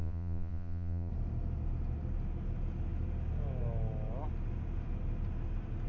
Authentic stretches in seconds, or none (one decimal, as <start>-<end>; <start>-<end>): 1.1-5.9